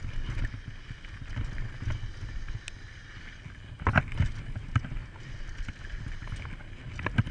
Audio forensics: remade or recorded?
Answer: recorded